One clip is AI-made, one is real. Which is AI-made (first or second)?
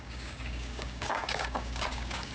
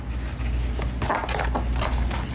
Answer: first